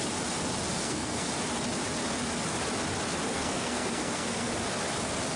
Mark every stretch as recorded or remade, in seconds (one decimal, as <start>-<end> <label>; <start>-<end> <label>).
0.0-0.7 recorded; 0.7-1.3 remade; 1.3-3.3 recorded; 3.3-4.5 remade; 4.5-5.4 recorded